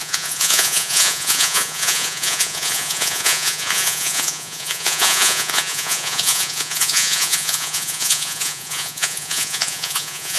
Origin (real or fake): fake